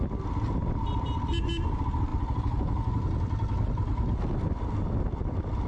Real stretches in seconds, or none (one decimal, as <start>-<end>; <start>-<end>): 0.0-5.7